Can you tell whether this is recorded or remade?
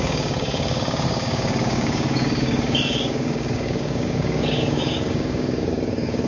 remade